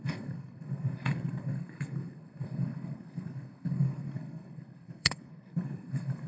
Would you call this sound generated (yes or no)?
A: yes